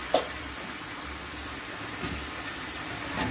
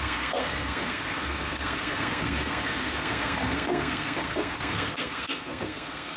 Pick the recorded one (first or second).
first